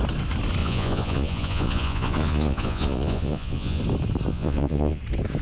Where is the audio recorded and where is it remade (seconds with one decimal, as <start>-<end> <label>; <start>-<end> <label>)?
0.0-0.6 recorded; 0.6-3.8 remade; 3.8-4.3 recorded; 4.3-5.0 remade; 5.0-5.4 recorded